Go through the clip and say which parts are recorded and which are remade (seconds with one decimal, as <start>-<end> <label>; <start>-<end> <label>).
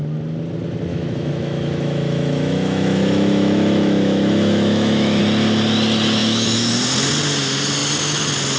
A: 0.0-0.9 recorded; 0.9-5.2 remade; 5.2-6.2 recorded; 6.2-6.7 remade; 6.7-8.6 recorded